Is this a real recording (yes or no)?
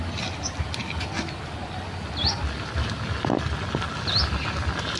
yes